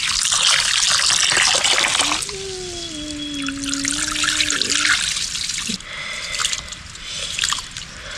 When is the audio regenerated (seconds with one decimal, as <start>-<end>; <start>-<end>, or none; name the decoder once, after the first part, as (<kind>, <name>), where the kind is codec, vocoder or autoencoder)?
none